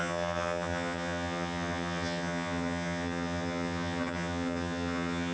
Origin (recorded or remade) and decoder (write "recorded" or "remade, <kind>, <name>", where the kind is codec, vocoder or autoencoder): remade, vocoder, HiFi-GAN